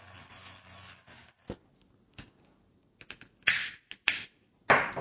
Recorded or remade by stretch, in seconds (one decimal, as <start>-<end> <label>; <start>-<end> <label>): 0.0-0.4 recorded; 0.4-1.7 remade; 1.7-5.0 recorded